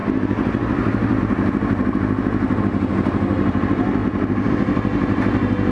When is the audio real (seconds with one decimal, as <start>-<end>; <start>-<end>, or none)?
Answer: 0.0-5.7